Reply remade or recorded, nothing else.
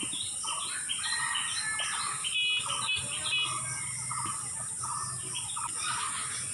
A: recorded